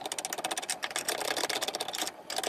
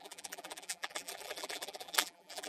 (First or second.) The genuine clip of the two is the first